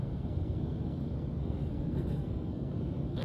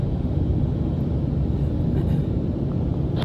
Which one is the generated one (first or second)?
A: first